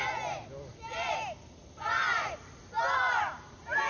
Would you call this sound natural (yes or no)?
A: no